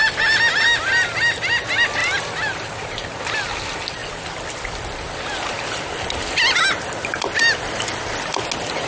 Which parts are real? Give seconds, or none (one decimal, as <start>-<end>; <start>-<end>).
0.0-8.9